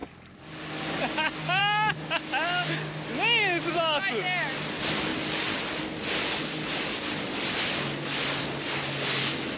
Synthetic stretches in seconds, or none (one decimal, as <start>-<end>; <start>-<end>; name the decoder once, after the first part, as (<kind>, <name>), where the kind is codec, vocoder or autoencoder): none